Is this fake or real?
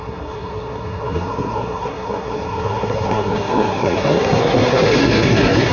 fake